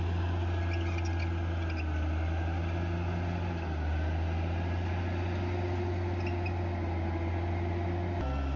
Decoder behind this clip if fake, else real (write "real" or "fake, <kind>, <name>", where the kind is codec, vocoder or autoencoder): real